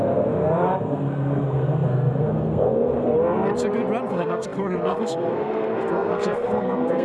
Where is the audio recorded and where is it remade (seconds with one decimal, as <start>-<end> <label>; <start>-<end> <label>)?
0.0-3.1 remade; 3.1-4.1 recorded; 4.1-7.0 remade